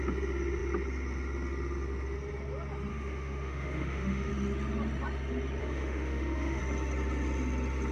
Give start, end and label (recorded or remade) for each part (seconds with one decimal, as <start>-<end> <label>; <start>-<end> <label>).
0.0-2.9 recorded; 2.9-4.3 remade; 4.3-5.6 recorded; 5.6-6.6 remade; 6.6-7.9 recorded